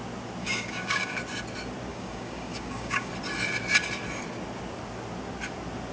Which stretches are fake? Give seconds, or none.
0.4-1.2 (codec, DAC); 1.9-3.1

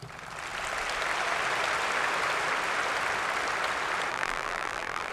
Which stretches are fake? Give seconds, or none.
4.1-5.1 (vocoder, BigVGAN v2)

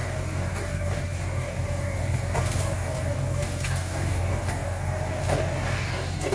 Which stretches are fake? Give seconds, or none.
0.0-6.3 (codec, DAC)

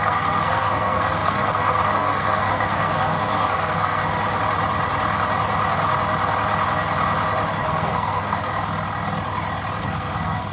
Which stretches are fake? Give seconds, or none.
0.0-4.0 (codec, SNAC); 7.5-8.4; 9.8-10.5

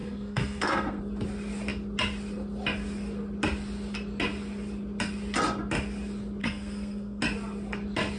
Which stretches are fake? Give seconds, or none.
0.0-1.0 (codec, SNAC); 6.4-7.2

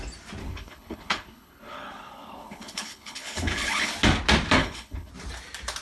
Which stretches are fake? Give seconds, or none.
0.4-3.9 (codec, HILCodec); 4.6-5.1

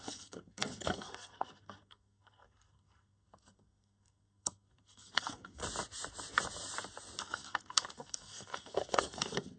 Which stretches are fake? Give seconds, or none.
0.0-5.6 (codec, SNAC); 7.2-9.6

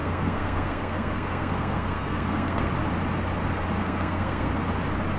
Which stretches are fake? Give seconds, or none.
0.0-2.7 (codec, SNAC); 3.8-4.5